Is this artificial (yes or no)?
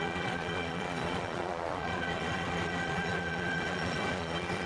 yes